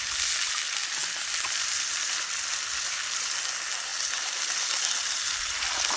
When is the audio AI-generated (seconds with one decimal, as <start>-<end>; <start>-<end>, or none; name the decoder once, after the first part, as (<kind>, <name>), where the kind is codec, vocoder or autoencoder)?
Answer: none